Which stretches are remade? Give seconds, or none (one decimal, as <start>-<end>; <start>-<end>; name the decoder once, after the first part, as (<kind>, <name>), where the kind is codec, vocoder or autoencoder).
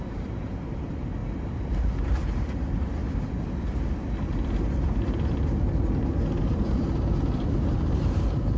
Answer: 0.0-1.2 (vocoder, BigVGAN v2); 1.8-3.0; 6.4-8.6